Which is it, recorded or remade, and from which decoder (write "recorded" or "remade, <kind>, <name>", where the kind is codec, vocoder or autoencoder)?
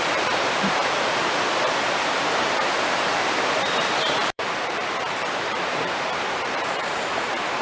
remade, vocoder, BigVGAN v2